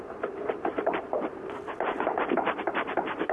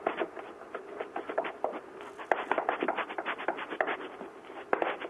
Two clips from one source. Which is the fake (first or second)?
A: first